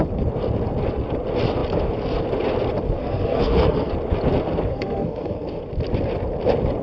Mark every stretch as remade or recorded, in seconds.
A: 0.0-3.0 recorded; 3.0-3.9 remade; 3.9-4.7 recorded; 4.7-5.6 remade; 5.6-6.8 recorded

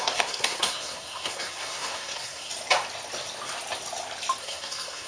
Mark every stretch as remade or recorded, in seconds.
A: 0.0-2.5 remade; 2.5-4.4 recorded; 4.4-5.1 remade

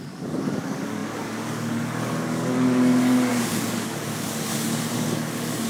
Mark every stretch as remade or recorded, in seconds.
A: 0.0-5.7 remade

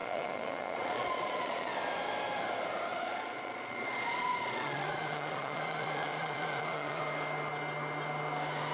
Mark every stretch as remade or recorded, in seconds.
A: 0.0-1.7 remade; 1.7-2.9 recorded; 2.9-7.0 remade; 7.0-8.7 recorded